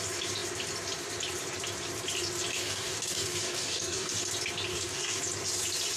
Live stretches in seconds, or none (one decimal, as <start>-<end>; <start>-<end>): 0.0-2.5; 4.2-4.7; 5.2-6.0